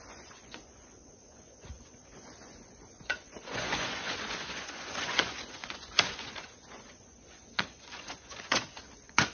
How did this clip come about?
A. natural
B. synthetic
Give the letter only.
B